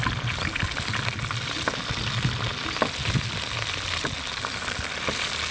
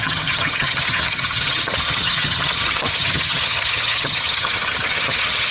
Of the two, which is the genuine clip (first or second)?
first